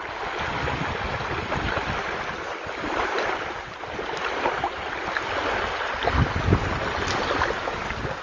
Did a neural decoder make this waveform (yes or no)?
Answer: no